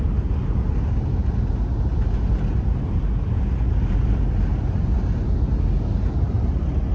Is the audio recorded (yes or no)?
yes